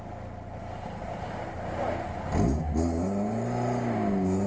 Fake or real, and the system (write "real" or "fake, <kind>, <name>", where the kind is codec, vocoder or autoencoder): real